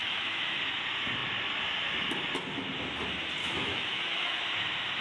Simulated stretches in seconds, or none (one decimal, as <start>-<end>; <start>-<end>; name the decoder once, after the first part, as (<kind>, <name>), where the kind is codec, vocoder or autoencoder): 0.0-0.6 (autoencoder, DAC-VAE); 3.4-4.4